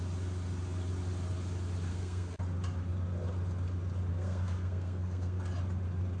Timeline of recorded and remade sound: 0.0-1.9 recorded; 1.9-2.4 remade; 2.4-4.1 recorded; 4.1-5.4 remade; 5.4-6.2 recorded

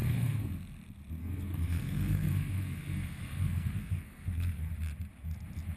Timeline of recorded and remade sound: 0.0-0.5 remade; 0.5-1.2 recorded; 1.2-4.7 remade; 4.7-5.8 recorded

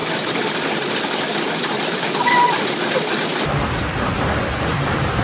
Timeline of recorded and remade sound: 0.0-3.1 remade; 3.1-5.2 recorded

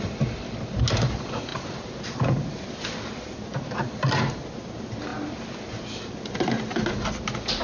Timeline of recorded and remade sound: 0.0-1.5 recorded; 1.5-3.6 remade; 3.6-7.6 recorded

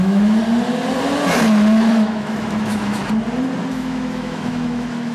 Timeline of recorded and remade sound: 0.0-0.4 remade; 0.4-1.9 recorded; 1.9-3.0 remade; 3.0-3.7 recorded; 3.7-5.1 remade

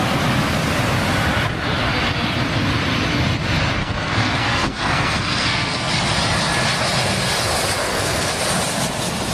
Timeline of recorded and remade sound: 0.0-3.8 recorded; 3.8-5.9 remade; 5.9-7.8 recorded; 7.8-8.3 remade; 8.3-9.3 recorded

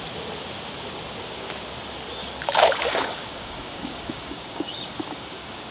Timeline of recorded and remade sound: 0.0-2.2 recorded; 2.2-5.7 remade